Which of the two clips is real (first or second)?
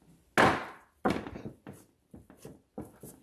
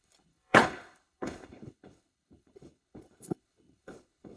first